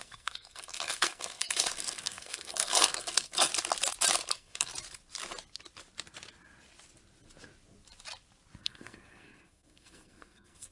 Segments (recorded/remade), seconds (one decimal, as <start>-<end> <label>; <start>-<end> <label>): 0.0-3.5 remade; 3.5-4.3 recorded; 4.3-4.7 remade; 4.7-8.6 recorded; 8.6-10.7 remade